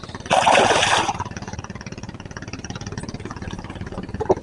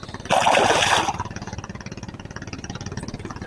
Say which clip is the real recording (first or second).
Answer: second